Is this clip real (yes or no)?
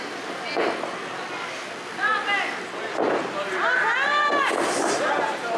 yes